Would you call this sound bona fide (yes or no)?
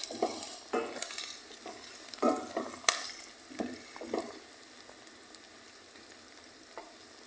yes